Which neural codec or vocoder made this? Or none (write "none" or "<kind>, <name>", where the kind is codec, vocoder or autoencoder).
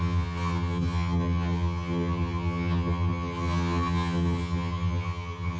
vocoder, HiFi-GAN